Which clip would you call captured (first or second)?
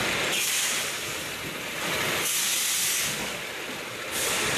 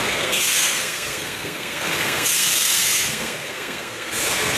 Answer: first